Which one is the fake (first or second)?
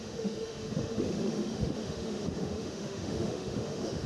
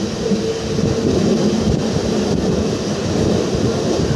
first